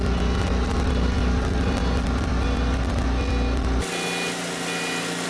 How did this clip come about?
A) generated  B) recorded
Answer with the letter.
B